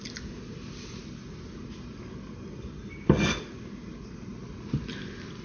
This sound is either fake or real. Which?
real